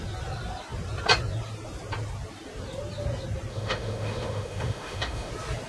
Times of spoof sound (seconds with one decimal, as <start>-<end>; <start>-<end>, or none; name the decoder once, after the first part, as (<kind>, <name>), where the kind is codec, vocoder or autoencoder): 3.5-5.3 (autoencoder, DAC-VAE)